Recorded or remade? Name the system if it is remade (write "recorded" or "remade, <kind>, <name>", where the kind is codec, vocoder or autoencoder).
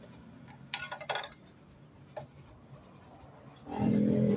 remade, vocoder, BigVGAN v2